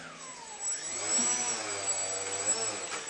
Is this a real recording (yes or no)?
yes